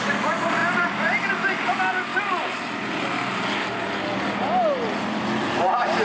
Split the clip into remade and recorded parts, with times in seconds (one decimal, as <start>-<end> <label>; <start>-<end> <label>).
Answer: 0.0-6.0 recorded